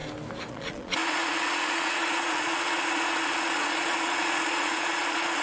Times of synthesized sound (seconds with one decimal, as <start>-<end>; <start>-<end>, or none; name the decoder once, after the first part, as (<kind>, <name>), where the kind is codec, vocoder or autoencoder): 0.5-5.4 (vocoder, Vocos)